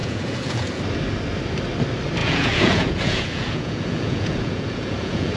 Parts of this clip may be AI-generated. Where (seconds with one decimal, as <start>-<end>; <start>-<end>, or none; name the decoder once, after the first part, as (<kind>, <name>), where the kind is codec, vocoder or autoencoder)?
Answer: 0.0-0.8 (vocoder, Vocos); 2.2-5.4